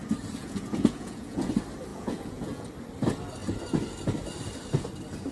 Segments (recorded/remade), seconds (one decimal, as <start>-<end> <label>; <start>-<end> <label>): 0.0-0.4 recorded; 0.4-1.5 remade; 1.5-1.9 recorded; 1.9-2.7 remade; 2.7-5.3 recorded